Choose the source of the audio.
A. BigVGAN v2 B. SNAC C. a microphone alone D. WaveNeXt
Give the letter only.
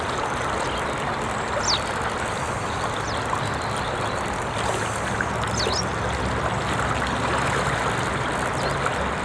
C